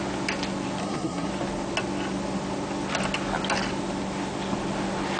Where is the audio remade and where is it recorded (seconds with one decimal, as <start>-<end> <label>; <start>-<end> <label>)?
0.0-0.8 recorded; 0.8-1.3 remade; 1.3-5.2 recorded